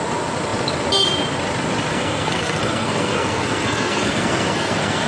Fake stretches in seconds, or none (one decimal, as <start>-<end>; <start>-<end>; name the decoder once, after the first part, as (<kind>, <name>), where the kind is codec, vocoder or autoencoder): 1.9-5.1 (codec, SNAC)